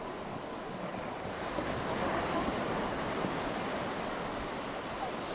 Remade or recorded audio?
recorded